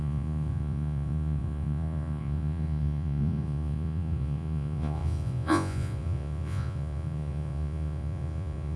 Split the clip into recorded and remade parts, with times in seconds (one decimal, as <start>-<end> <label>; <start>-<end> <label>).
0.0-8.8 remade